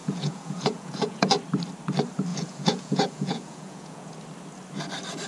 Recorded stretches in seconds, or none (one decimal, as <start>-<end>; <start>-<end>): 1.3-2.3; 4.1-5.3